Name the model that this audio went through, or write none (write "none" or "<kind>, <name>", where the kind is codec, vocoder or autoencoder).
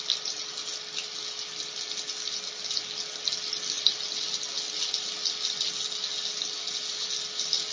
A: none